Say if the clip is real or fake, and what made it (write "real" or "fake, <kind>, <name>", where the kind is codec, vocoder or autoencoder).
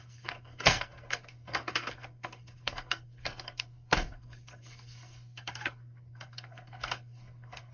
fake, codec, SNAC